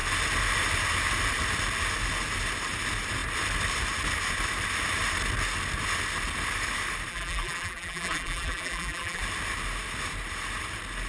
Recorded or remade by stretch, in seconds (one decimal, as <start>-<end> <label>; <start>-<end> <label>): 0.0-7.1 recorded; 7.1-9.2 remade; 9.2-11.1 recorded